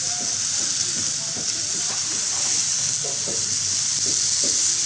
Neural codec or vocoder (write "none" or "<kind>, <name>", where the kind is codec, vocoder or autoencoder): none